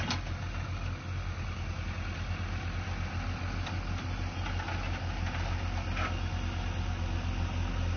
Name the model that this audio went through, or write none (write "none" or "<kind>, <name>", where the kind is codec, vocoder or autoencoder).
none